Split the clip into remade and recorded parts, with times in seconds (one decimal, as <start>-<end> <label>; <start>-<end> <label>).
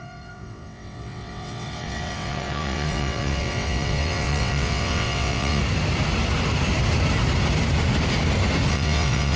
0.0-5.6 remade; 5.6-8.7 recorded; 8.7-9.4 remade